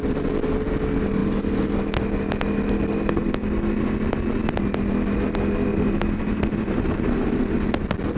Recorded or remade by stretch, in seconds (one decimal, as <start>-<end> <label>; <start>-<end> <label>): 0.0-5.7 recorded; 5.7-7.4 remade; 7.4-8.2 recorded